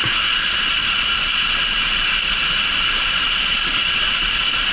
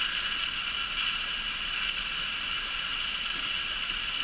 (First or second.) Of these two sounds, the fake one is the first